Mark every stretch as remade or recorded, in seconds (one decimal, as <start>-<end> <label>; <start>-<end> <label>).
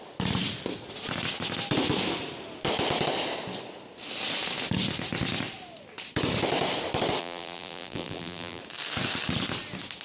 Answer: 0.0-7.2 recorded; 7.2-8.6 remade; 8.6-10.0 recorded